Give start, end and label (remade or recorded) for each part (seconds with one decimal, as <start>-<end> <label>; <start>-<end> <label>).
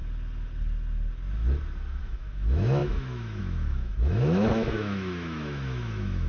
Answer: 0.0-2.0 recorded; 2.0-6.3 remade